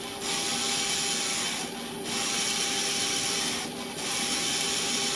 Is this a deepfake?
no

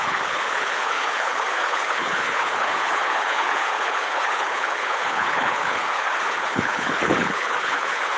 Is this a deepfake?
yes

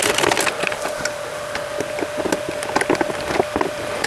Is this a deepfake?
no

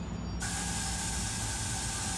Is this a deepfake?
no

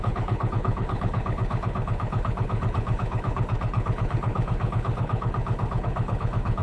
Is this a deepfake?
yes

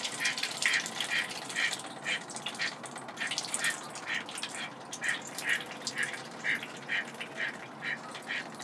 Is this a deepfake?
no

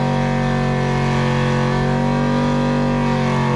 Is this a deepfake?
no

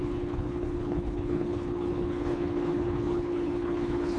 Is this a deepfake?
yes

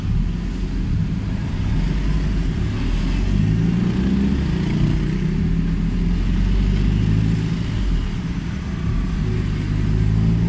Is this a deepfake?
no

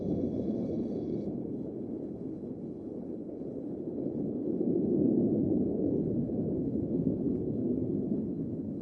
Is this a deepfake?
yes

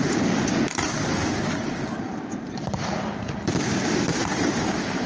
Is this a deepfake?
no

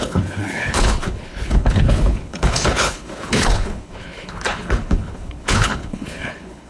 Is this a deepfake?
yes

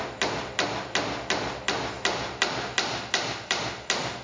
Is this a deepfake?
no